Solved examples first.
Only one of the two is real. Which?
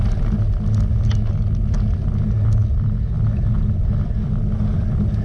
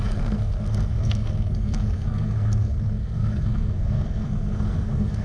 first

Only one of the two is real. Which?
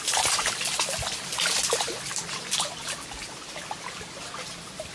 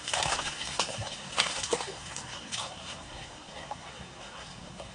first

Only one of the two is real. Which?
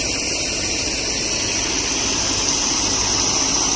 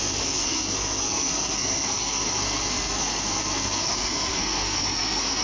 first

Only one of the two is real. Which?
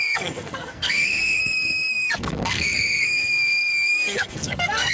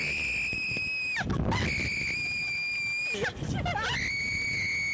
second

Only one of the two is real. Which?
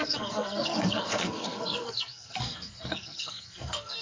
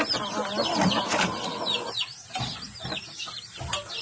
second